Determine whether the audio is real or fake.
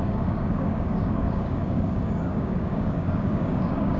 fake